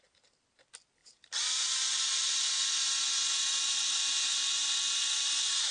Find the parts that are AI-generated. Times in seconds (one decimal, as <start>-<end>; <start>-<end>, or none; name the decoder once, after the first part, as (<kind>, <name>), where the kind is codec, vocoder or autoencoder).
1.0-2.4 (vocoder, BigVGAN v2)